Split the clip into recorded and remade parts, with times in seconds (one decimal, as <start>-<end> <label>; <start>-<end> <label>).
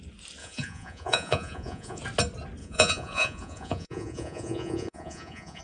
0.0-0.4 recorded; 0.4-2.0 remade; 2.0-2.6 recorded; 2.6-5.6 remade